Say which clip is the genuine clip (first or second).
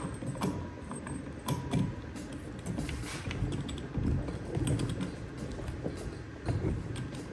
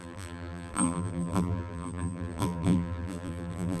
first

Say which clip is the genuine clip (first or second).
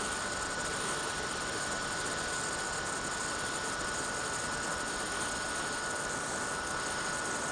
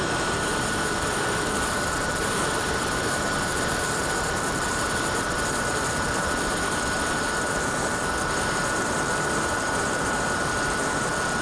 first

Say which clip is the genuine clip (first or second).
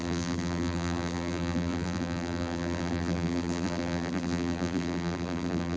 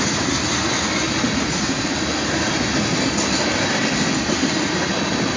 second